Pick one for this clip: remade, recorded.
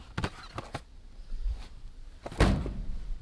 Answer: recorded